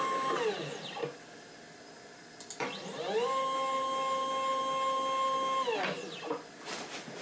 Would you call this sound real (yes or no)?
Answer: yes